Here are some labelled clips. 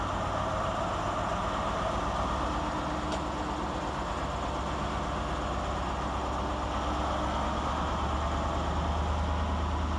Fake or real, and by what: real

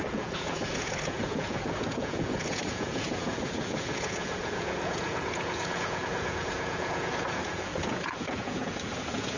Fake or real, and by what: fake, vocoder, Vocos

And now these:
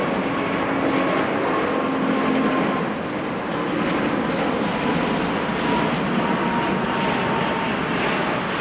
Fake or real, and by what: real